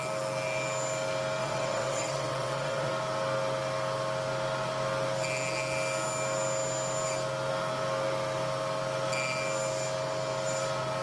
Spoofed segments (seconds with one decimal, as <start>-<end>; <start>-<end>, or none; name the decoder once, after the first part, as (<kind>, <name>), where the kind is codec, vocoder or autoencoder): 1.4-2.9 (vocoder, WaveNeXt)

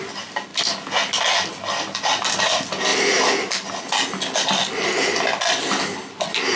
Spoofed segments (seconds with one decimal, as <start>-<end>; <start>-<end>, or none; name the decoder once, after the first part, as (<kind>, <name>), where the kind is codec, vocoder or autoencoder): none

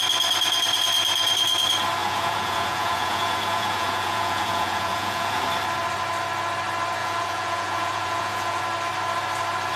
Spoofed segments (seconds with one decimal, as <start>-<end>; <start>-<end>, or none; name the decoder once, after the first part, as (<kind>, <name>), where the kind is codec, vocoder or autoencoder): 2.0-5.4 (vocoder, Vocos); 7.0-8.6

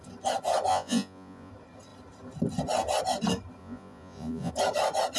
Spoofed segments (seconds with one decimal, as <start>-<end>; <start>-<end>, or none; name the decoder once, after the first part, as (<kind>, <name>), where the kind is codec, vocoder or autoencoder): 0.7-1.5 (vocoder, Vocos); 3.6-4.5

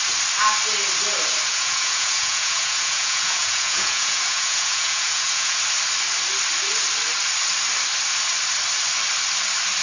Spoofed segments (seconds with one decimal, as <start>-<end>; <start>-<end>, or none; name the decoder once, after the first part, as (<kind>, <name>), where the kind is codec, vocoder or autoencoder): 1.5-5.6 (vocoder, Vocos)

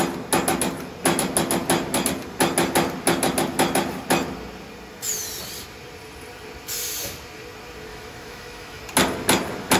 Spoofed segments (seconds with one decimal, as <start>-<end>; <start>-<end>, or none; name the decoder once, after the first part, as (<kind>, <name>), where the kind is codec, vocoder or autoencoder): 7.9-8.8 (autoencoder, DAC-VAE)